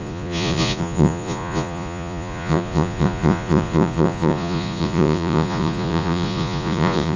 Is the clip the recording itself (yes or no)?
no